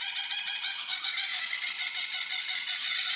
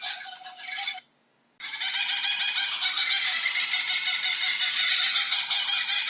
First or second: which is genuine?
second